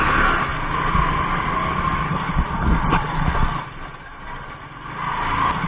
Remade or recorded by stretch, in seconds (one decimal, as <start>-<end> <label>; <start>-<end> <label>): 0.0-5.7 recorded